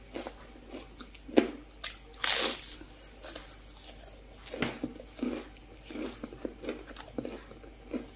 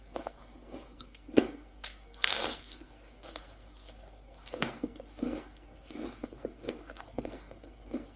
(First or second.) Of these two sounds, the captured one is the first